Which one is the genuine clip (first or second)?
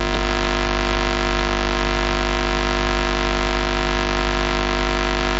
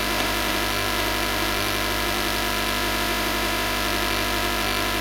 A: first